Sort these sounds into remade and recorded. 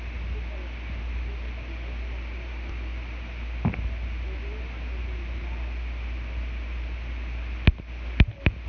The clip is recorded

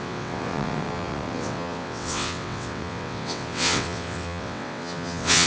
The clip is remade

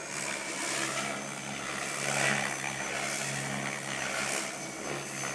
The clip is recorded